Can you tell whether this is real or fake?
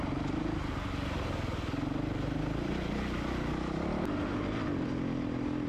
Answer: real